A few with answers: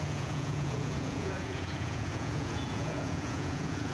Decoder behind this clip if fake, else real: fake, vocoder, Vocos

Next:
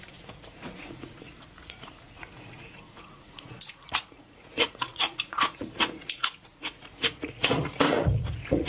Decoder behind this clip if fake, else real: fake, vocoder, Vocos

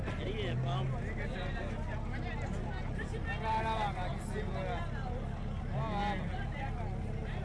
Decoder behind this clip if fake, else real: real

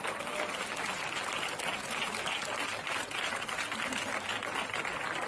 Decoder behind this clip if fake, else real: real